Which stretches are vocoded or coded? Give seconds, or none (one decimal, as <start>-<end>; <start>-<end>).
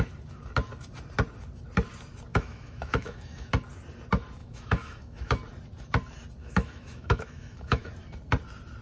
2.3-3.5; 4.4-5.3; 6.4-7.9